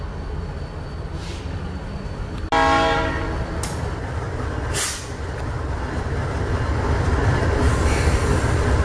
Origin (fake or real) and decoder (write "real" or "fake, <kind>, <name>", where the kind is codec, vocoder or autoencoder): real